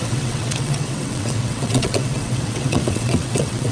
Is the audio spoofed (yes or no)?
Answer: yes